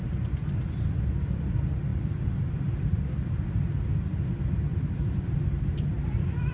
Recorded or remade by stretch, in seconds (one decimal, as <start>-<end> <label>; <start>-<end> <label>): 0.0-6.5 recorded